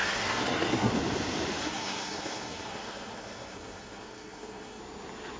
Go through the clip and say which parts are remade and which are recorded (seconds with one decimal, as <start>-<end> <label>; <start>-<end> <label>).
0.0-0.9 remade; 0.9-1.6 recorded; 1.6-4.8 remade; 4.8-5.4 recorded